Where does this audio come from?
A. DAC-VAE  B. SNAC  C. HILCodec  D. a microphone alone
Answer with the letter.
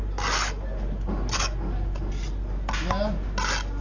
D